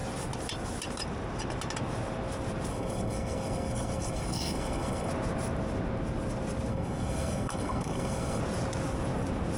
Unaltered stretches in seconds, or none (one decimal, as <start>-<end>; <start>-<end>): 0.0-2.7; 5.1-6.7; 8.4-9.6